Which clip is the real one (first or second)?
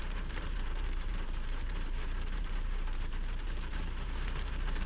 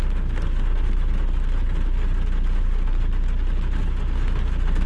second